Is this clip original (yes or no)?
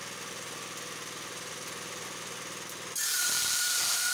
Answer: yes